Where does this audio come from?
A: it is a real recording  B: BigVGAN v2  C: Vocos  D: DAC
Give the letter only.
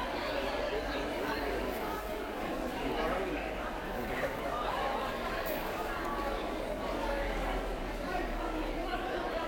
D